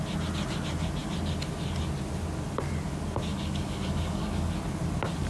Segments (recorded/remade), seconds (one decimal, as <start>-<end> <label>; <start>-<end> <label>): 0.0-3.3 recorded; 3.3-4.5 remade; 4.5-5.3 recorded